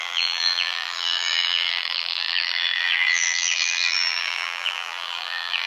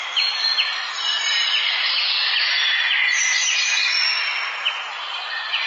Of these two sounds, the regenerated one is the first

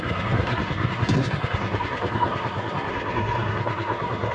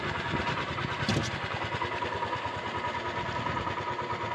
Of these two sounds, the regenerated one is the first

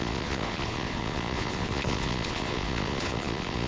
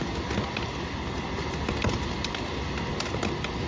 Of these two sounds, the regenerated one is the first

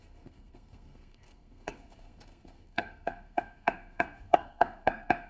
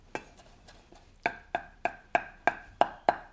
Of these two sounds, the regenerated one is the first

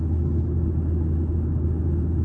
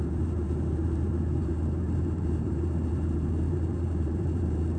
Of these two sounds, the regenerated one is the second